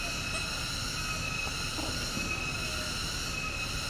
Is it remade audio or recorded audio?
recorded